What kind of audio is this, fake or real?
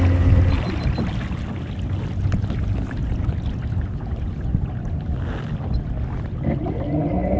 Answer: real